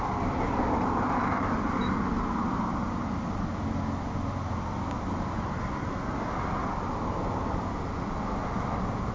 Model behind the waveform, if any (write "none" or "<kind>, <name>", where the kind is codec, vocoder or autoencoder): none